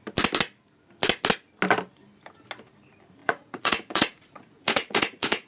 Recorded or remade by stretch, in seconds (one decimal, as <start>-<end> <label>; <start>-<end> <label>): 0.0-3.2 recorded; 3.2-5.5 remade